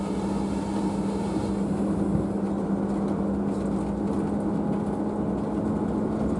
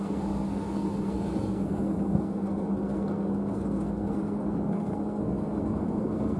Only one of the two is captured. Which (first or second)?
first